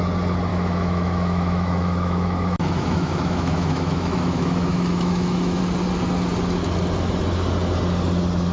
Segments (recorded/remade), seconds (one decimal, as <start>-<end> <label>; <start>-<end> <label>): 0.0-0.5 recorded; 0.5-5.6 remade; 5.6-8.5 recorded